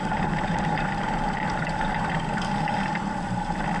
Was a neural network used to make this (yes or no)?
no